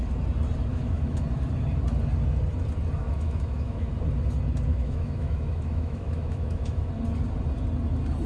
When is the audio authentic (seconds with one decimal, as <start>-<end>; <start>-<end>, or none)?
0.0-0.7; 1.2-3.0; 3.9-4.7; 6.9-8.3